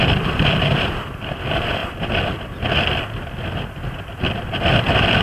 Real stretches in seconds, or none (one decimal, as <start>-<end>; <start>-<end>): 0.0-5.2